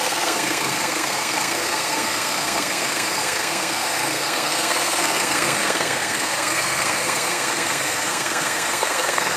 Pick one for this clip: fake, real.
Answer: fake